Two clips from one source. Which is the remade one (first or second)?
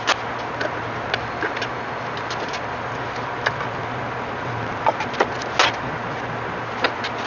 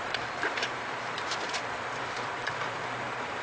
second